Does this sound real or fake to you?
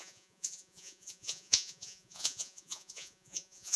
fake